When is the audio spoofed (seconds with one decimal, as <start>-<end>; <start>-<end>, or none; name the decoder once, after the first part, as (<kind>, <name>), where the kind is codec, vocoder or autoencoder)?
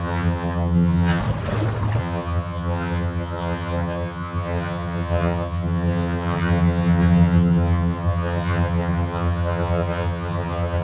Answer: 0.0-1.2 (vocoder, HiFi-GAN); 2.0-10.8